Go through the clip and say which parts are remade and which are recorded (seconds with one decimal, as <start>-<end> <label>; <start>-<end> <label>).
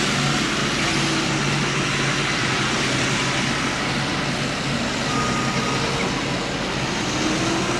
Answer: 0.0-7.8 recorded